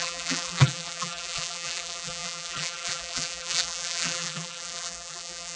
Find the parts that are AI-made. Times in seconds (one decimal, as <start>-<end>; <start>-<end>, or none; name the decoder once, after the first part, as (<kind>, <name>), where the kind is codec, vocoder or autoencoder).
0.0-5.6 (vocoder, BigVGAN v2)